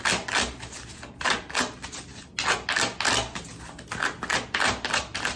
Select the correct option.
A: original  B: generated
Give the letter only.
A